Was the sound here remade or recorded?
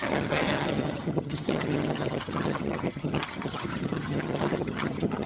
remade